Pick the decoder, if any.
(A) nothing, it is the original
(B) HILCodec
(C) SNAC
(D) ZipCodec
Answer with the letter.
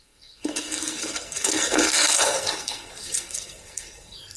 C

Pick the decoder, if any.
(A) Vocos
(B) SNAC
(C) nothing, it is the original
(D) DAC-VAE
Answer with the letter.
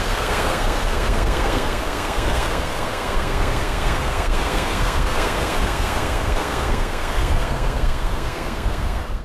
B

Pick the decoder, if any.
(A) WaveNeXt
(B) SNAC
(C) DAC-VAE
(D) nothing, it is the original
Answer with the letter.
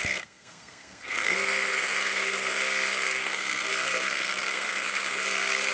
B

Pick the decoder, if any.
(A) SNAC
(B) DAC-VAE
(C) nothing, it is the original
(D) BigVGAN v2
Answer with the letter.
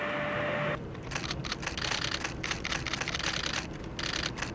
C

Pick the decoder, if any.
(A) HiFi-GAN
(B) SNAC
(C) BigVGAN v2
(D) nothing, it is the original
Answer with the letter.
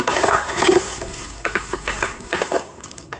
B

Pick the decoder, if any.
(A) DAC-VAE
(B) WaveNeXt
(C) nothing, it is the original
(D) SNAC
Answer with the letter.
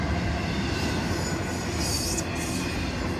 C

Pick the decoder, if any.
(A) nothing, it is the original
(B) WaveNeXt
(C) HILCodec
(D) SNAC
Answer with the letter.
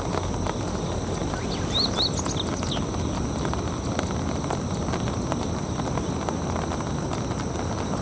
A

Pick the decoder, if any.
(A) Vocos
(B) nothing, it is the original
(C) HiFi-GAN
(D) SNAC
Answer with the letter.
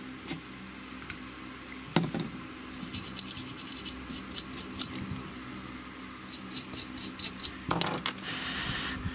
B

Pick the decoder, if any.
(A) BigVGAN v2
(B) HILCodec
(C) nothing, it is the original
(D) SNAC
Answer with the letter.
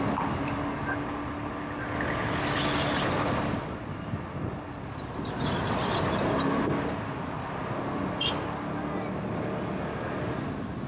C